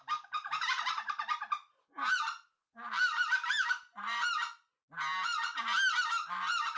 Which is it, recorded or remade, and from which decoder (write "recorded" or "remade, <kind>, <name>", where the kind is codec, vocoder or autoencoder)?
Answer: recorded